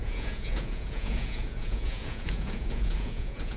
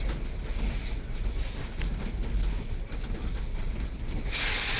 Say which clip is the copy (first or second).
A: first